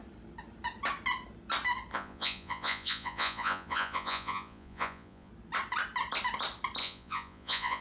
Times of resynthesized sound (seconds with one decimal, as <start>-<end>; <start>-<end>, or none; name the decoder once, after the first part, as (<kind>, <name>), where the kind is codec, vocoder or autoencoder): 1.9-5.3 (vocoder, Vocos); 6.8-7.8